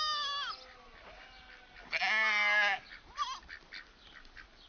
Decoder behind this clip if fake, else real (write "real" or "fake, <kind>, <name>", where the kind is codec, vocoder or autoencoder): real